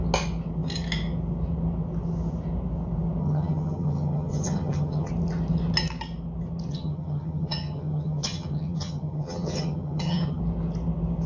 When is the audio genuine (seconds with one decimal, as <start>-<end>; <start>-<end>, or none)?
0.0-3.2; 5.1-6.7; 10.4-11.3